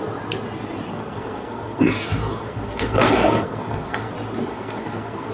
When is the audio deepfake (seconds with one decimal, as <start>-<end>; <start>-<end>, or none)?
0.9-4.1; 4.5-5.3